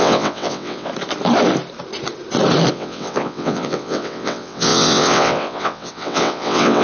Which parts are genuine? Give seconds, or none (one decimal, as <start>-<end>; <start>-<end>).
0.9-2.7